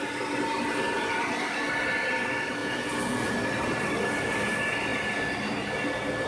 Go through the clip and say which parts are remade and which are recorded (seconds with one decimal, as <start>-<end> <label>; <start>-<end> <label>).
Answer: 0.0-2.6 recorded; 2.6-3.3 remade; 3.3-6.3 recorded